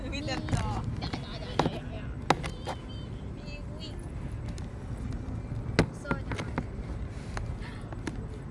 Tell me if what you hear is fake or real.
real